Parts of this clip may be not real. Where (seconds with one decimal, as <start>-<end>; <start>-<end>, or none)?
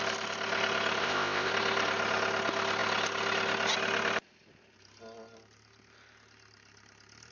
1.0-1.5